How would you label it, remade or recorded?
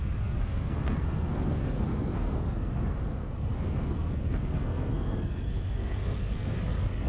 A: remade